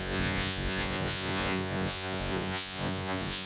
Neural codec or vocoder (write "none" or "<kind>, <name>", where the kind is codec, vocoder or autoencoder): vocoder, Vocos